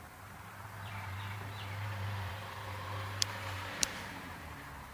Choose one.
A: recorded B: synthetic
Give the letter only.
B